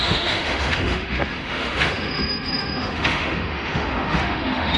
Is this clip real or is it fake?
fake